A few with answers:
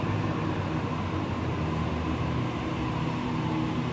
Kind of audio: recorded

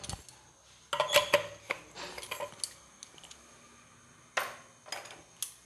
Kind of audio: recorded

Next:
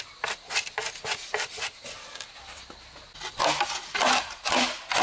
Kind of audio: recorded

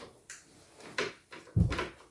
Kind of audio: remade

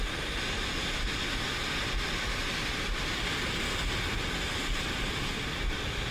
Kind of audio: recorded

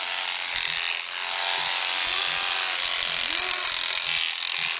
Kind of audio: recorded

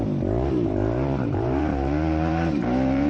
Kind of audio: remade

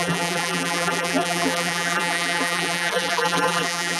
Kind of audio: remade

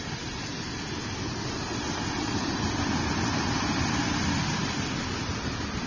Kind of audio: remade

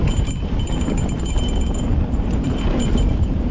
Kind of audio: remade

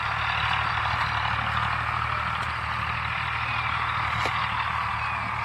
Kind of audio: recorded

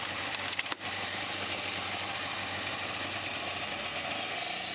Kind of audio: recorded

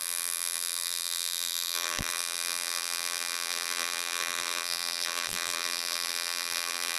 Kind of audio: remade